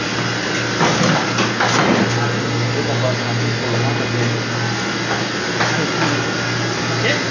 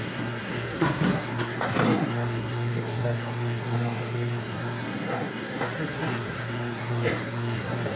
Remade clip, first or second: second